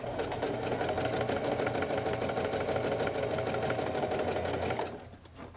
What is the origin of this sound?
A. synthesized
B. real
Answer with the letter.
B